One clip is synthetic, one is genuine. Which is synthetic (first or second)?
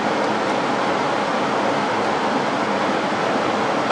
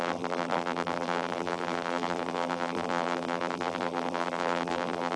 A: second